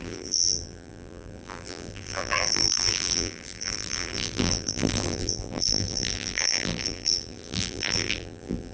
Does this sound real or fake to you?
fake